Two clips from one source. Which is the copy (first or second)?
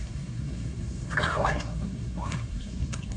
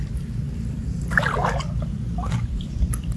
first